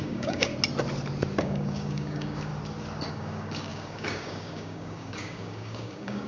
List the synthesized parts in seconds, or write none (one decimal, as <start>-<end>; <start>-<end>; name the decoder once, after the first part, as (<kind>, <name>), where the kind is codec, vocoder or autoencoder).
0.0-0.5 (codec, DAC); 1.4-2.5; 3.1-6.3

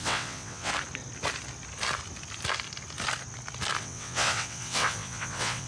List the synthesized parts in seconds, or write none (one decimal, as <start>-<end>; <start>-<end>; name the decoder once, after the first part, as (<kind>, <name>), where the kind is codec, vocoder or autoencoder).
0.0-0.7 (vocoder, WaveNeXt); 3.8-5.7

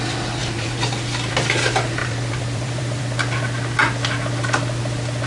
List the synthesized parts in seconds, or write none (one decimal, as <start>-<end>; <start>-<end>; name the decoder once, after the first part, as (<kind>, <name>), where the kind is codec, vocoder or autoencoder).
0.4-1.3 (vocoder, BigVGAN v2); 2.0-3.0

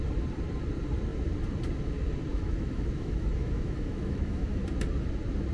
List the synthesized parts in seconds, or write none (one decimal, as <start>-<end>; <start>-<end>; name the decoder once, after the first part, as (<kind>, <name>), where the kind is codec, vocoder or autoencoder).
2.3-4.6 (autoencoder, DAC-VAE)

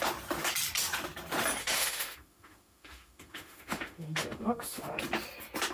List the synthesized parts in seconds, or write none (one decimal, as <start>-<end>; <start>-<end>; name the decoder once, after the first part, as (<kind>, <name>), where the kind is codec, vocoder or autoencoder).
1.6-5.0 (autoencoder, DAC-VAE)

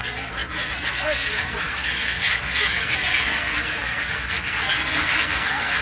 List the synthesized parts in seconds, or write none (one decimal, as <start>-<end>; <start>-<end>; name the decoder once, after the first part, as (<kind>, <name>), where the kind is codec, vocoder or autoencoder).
0.0-5.8 (codec, SNAC)

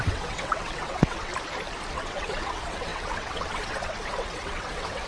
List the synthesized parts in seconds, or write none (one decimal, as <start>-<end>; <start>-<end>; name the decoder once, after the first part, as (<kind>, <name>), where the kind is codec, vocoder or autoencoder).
0.0-1.3 (vocoder, WaveNeXt); 1.9-5.1

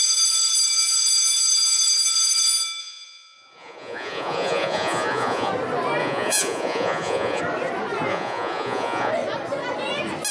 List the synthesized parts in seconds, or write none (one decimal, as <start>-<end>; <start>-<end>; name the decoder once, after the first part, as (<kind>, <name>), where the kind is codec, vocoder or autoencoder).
2.8-5.5 (vocoder, Vocos); 6.0-7.4; 8.1-9.1